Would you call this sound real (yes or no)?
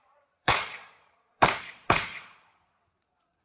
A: no